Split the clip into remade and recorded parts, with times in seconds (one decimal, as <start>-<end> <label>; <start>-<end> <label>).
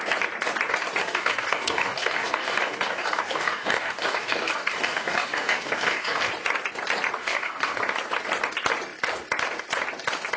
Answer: 0.0-1.0 recorded; 1.0-6.3 remade; 6.3-7.2 recorded; 7.2-7.8 remade; 7.8-10.4 recorded